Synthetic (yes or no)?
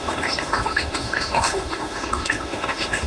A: yes